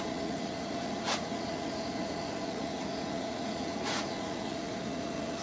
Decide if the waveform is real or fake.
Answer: fake